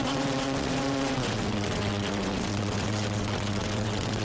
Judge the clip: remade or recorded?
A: remade